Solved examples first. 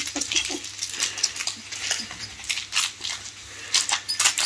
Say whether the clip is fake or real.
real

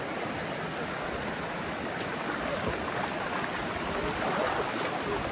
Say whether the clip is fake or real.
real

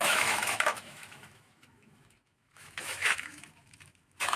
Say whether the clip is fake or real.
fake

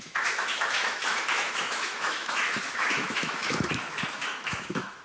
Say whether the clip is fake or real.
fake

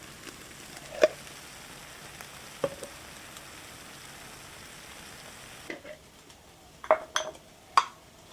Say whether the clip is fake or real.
real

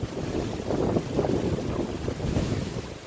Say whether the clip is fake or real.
real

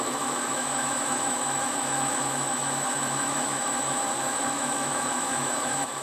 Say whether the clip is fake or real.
fake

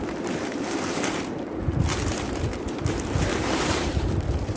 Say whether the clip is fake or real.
fake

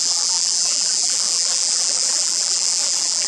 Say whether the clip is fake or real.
fake